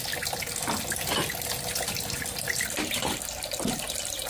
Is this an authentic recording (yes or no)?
yes